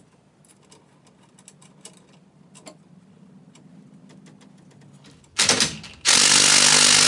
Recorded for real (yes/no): yes